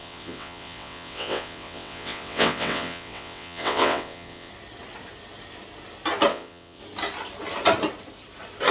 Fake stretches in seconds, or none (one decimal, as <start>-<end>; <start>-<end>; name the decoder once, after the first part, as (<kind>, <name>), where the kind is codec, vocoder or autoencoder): 0.0-4.5 (vocoder, WaveNeXt); 6.3-6.8